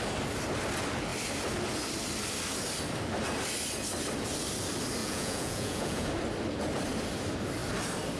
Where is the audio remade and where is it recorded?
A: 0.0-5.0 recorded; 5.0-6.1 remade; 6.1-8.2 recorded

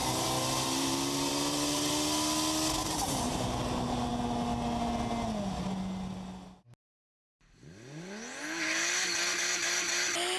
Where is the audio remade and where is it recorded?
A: 0.0-1.9 remade; 1.9-2.8 recorded; 2.8-3.4 remade; 3.4-10.4 recorded

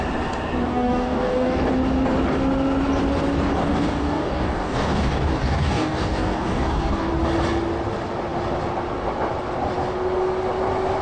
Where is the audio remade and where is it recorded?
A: 0.0-0.7 recorded; 0.7-1.7 remade; 1.7-3.6 recorded; 3.6-7.1 remade; 7.1-11.0 recorded

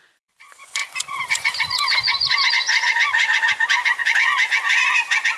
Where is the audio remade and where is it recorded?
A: 0.0-5.4 remade

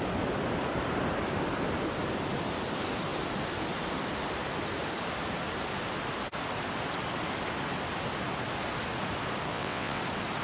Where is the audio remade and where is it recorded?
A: 0.0-9.5 recorded; 9.5-10.0 remade; 10.0-10.4 recorded